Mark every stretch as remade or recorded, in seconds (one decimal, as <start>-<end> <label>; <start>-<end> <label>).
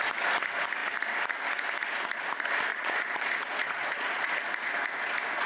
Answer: 0.0-2.7 recorded; 2.7-4.3 remade; 4.3-5.5 recorded